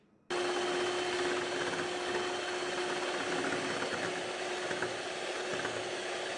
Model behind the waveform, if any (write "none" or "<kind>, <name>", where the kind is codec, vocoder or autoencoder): none